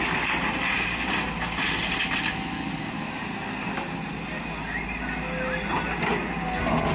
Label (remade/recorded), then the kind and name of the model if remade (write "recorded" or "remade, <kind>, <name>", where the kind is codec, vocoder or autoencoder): recorded